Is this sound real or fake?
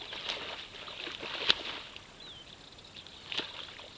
real